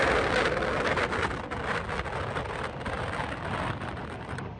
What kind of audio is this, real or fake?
real